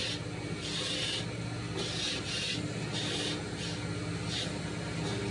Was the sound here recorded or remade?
recorded